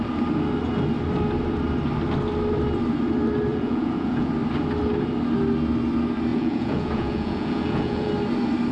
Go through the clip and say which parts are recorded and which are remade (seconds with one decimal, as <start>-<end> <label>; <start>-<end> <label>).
0.0-3.5 recorded; 3.5-4.3 remade; 4.3-6.3 recorded; 6.3-8.1 remade; 8.1-8.7 recorded